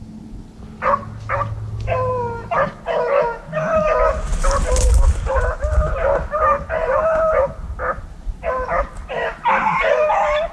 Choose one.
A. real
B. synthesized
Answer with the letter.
A